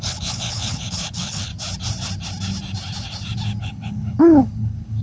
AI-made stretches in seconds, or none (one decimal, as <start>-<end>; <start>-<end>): 0.0-1.5; 3.6-5.0